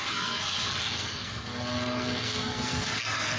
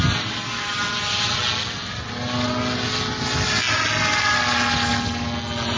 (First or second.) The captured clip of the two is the second